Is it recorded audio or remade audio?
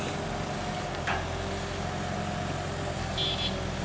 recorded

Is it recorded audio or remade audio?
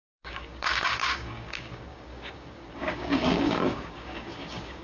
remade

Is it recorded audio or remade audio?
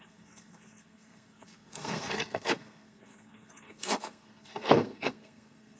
remade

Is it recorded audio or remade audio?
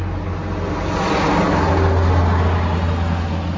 recorded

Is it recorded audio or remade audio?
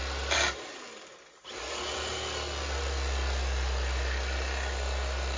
recorded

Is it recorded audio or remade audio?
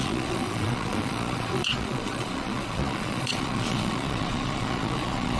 remade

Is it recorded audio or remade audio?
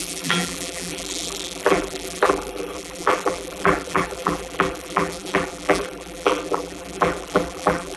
remade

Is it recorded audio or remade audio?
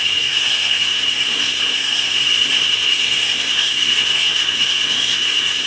remade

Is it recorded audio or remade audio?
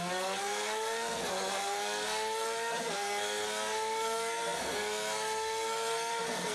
remade